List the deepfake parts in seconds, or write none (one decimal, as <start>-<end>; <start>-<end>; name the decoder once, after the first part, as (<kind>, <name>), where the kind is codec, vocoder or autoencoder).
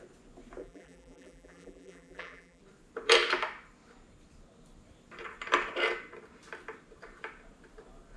0.6-2.6 (vocoder, BigVGAN v2)